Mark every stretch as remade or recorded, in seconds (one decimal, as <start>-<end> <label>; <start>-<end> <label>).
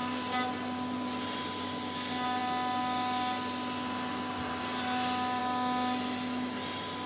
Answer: 0.0-7.1 recorded